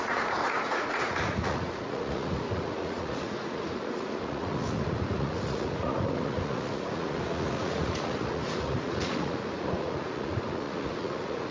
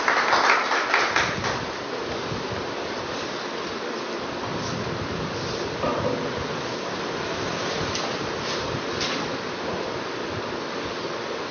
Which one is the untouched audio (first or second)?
second